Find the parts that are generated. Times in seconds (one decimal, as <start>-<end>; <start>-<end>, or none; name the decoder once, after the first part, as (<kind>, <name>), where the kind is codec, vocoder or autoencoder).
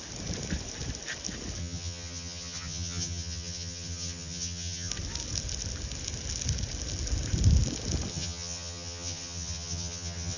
1.6-4.9 (vocoder, HiFi-GAN); 8.1-10.4